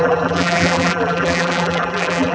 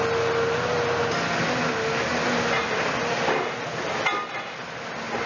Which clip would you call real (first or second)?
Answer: second